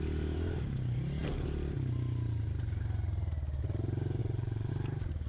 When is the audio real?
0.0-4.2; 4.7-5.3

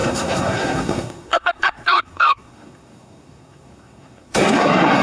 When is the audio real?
none

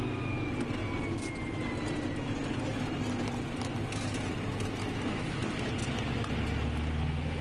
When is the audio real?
0.0-4.8; 5.4-7.4

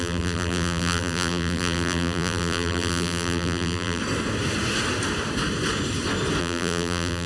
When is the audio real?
4.0-6.4

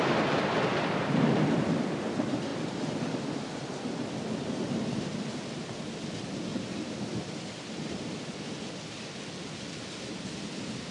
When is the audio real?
0.0-2.5; 3.1-6.5

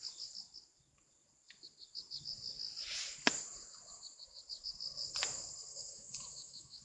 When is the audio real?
0.0-5.7

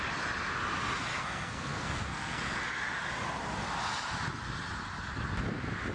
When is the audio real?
0.0-1.1; 2.6-5.9